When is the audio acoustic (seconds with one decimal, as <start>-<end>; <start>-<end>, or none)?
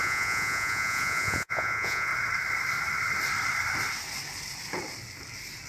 2.1-5.7